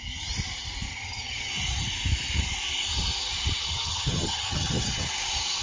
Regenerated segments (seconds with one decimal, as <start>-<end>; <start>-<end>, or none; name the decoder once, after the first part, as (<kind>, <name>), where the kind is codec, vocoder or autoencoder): 0.9-1.5 (vocoder, HiFi-GAN); 3.7-5.1